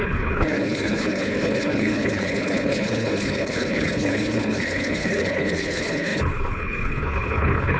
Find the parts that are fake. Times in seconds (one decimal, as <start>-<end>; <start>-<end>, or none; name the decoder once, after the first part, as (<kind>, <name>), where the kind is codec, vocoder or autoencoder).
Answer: 0.0-7.8 (codec, HILCodec)